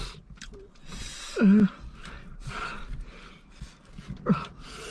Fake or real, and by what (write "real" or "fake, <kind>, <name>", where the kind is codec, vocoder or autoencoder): real